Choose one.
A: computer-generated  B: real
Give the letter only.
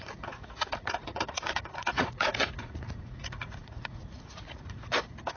A